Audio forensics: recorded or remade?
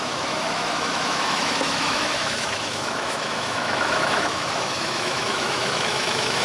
remade